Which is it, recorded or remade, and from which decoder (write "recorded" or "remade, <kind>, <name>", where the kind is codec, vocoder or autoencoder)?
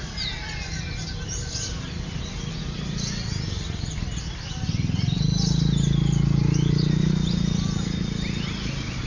recorded